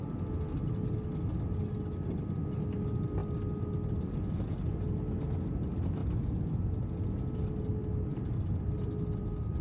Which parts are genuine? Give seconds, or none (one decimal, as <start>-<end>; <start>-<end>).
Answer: 0.0-8.1; 8.9-9.6